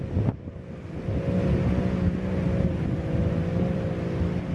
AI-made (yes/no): no